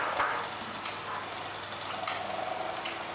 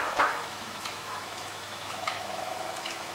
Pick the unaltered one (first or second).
first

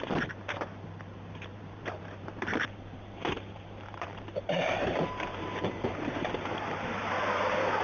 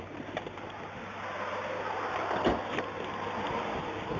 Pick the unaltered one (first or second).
second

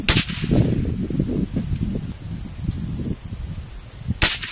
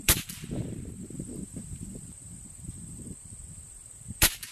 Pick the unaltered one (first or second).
first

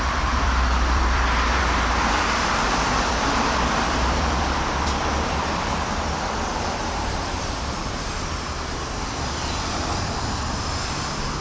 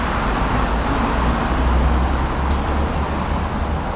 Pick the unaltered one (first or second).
second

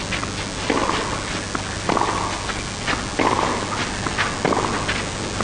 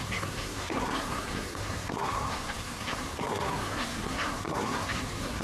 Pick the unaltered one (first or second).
first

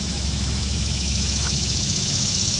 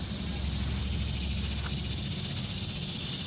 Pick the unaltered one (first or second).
second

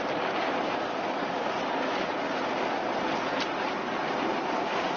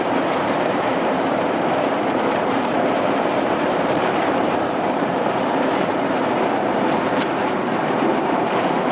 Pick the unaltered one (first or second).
first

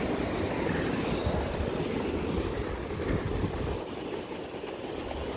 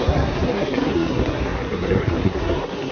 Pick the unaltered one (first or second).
first